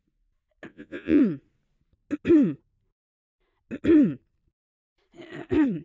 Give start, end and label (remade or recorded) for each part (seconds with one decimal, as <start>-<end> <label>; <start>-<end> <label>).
0.0-0.7 recorded; 0.7-1.2 remade; 1.2-5.8 recorded